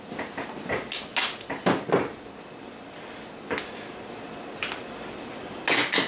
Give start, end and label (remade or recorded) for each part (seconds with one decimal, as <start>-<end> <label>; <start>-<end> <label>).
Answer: 0.0-6.1 recorded